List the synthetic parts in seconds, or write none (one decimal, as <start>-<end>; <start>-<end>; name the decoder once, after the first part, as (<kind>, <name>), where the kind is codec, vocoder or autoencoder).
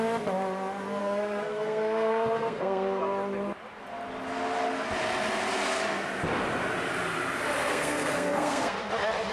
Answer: 1.0-3.0 (codec, SNAC); 7.7-8.8